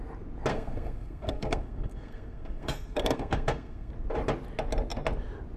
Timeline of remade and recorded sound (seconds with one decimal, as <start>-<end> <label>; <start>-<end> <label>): 0.0-0.5 recorded; 0.5-3.9 remade; 3.9-5.6 recorded